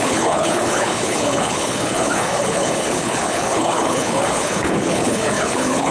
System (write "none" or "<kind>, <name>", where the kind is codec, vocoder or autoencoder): codec, HILCodec